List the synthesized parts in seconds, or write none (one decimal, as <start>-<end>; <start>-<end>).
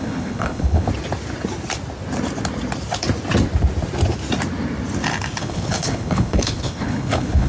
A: 0.0-0.9; 5.4-7.5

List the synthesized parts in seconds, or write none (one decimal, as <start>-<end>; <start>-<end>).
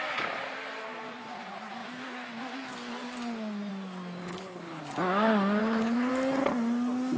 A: 4.2-4.8; 5.6-6.1